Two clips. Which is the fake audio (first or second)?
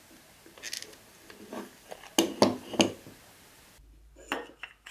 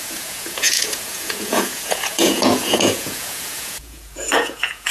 second